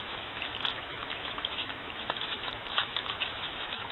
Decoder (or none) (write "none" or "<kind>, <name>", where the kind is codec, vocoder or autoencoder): autoencoder, DAC-VAE